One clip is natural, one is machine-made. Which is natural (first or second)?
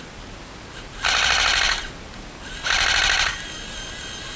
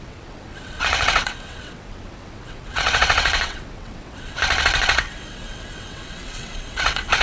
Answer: first